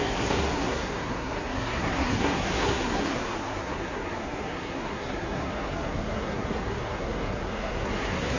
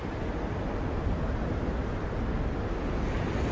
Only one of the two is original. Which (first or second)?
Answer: second